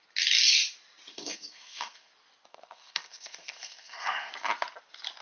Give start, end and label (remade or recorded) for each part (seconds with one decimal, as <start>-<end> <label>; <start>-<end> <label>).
0.0-1.1 recorded; 1.1-2.1 remade; 2.1-2.5 recorded; 2.5-4.3 remade; 4.3-5.2 recorded